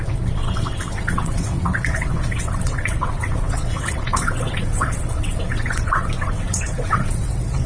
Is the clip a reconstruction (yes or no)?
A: yes